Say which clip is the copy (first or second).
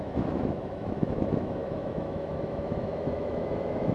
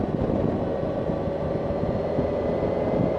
first